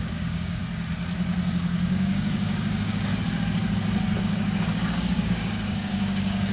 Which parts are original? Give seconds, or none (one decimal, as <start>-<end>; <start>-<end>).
0.6-1.5; 3.1-4.2